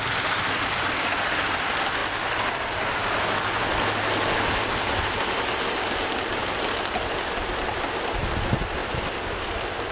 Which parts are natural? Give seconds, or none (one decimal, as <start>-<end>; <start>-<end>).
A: 0.0-8.8